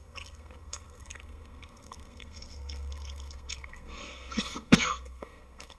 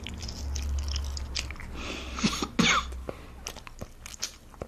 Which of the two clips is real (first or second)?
second